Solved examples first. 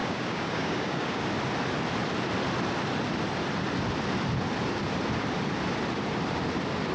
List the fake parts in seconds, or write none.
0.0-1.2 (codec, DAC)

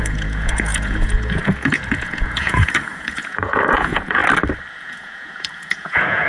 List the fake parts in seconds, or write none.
0.0-4.2 (vocoder, Vocos); 4.7-6.3

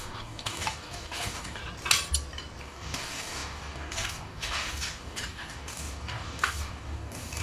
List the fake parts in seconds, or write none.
0.0-1.6 (codec, DAC); 2.6-7.4